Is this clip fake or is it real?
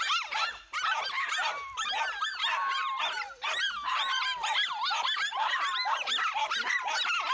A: real